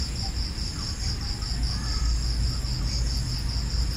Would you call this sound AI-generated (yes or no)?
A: no